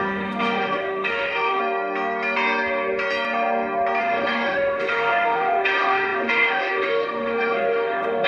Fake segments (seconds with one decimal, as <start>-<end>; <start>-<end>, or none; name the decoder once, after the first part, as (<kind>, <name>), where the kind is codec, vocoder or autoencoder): 0.0-1.6 (autoencoder, DAC-VAE); 4.0-8.3